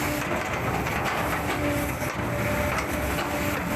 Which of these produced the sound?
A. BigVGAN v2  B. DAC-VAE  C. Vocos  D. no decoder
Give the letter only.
D